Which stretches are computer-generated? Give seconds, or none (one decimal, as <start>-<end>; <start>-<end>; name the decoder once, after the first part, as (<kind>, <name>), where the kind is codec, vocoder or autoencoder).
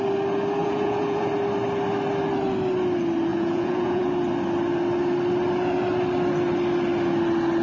0.6-1.3 (vocoder, Vocos); 3.3-4.0